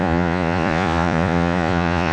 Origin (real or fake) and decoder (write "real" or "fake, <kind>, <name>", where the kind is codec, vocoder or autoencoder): fake, vocoder, Vocos